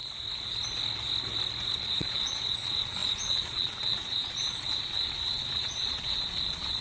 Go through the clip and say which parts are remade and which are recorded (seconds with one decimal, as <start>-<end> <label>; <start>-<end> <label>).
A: 0.0-1.8 recorded; 1.8-6.8 remade

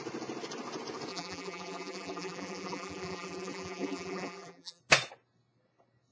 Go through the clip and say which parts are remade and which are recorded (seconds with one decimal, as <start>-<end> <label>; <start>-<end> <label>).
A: 0.0-1.1 recorded; 1.1-4.8 remade; 4.8-6.1 recorded

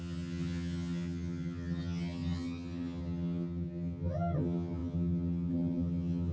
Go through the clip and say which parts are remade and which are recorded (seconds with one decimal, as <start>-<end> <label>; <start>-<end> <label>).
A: 0.0-6.3 remade